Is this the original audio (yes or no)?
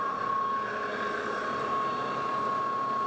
yes